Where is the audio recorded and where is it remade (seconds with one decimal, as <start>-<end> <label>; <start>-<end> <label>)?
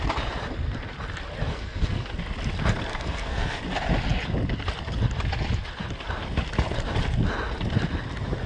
0.0-1.5 recorded; 1.5-2.1 remade; 2.1-2.9 recorded; 2.9-3.6 remade; 3.6-8.5 recorded